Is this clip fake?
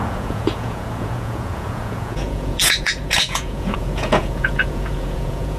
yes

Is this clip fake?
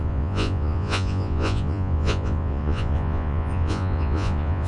yes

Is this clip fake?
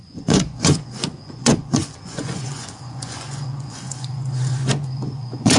yes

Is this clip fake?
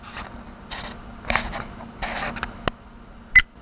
no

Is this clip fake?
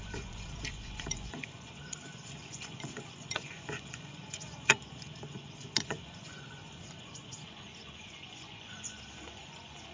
yes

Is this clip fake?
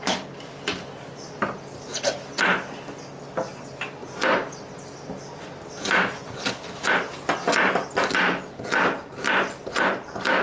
no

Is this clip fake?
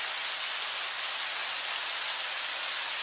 no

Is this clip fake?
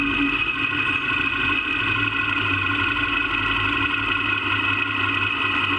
no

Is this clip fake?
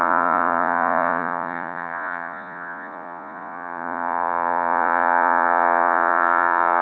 yes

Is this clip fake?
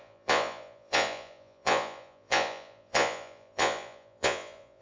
yes